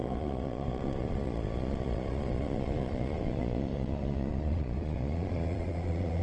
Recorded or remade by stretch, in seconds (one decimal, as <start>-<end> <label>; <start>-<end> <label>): 0.0-6.2 remade